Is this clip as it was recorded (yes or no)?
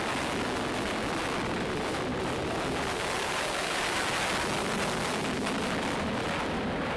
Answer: yes